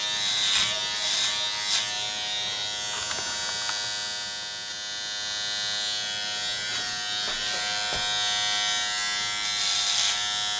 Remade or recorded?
recorded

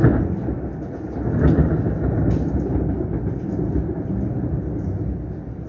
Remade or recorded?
recorded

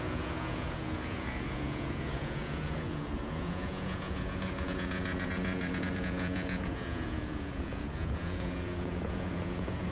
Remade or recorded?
remade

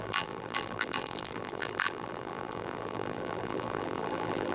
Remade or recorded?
remade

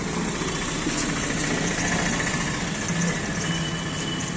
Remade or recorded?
recorded